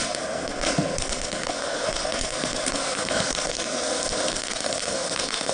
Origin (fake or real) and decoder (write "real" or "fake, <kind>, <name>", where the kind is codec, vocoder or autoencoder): fake, codec, SNAC